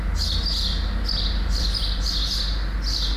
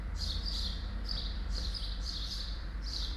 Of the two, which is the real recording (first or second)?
first